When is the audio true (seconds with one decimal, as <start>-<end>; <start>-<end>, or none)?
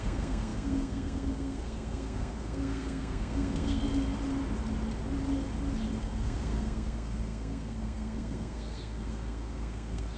3.8-6.0